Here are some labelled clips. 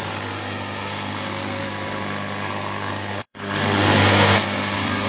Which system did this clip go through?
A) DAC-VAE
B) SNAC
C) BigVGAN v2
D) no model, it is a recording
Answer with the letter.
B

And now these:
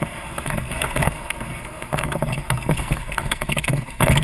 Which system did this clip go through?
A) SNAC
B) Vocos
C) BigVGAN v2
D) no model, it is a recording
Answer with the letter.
A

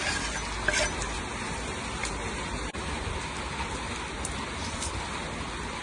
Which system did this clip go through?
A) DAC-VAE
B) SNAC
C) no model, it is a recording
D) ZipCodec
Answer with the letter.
C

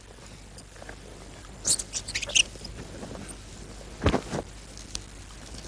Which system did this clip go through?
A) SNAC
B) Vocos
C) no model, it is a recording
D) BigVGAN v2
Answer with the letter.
C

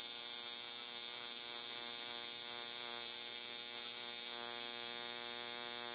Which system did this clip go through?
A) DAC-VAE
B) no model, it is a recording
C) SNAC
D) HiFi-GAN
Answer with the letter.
B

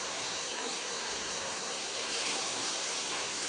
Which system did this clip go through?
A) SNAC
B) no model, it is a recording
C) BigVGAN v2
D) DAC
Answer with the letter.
A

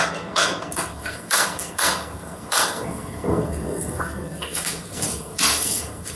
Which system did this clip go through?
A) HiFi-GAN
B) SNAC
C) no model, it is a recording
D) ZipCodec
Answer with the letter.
B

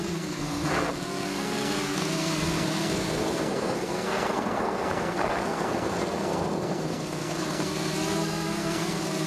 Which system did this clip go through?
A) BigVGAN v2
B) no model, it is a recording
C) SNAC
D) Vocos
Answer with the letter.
C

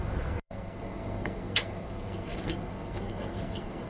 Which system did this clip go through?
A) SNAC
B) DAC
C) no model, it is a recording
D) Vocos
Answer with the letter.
A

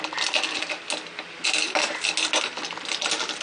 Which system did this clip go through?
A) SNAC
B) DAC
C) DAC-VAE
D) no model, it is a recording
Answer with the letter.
D